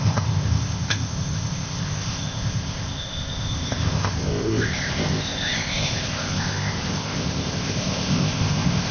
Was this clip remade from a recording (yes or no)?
yes